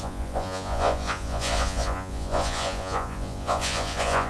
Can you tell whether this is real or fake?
fake